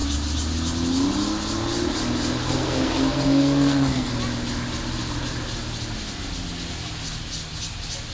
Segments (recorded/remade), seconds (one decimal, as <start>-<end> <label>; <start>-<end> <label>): 0.0-2.4 recorded; 2.4-4.1 remade; 4.1-8.1 recorded